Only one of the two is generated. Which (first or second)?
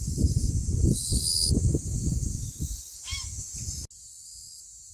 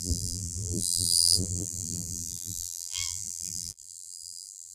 second